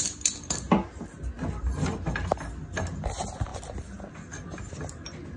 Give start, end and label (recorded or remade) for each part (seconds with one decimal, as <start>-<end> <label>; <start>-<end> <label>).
0.0-5.4 recorded